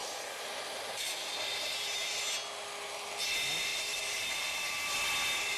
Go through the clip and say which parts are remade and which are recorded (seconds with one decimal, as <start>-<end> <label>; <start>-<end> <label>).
0.0-2.1 remade; 2.1-3.7 recorded; 3.7-4.9 remade; 4.9-5.6 recorded

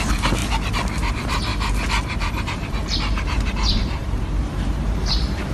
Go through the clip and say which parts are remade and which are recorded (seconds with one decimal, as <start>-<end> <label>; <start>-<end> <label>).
0.0-0.4 remade; 0.4-1.1 recorded; 1.1-1.5 remade; 1.5-2.3 recorded; 2.3-5.5 remade

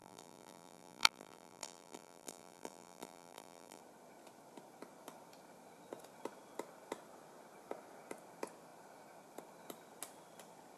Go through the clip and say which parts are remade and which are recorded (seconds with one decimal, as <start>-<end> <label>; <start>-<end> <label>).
0.0-3.8 remade; 3.8-10.8 recorded

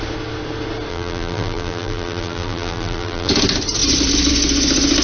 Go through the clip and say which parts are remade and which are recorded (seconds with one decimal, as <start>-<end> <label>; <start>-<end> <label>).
0.0-0.9 recorded; 0.9-3.3 remade; 3.3-5.0 recorded

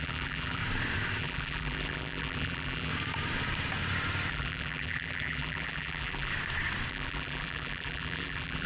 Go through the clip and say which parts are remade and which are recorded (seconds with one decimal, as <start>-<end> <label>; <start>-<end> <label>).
0.0-0.6 remade; 0.6-1.2 recorded; 1.2-2.9 remade; 2.9-4.3 recorded; 4.3-6.3 remade; 6.3-6.9 recorded; 6.9-8.7 remade